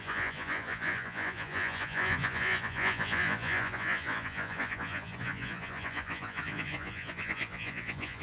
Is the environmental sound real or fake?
fake